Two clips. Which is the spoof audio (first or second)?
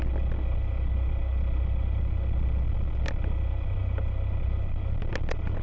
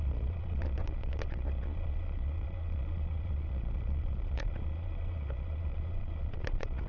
second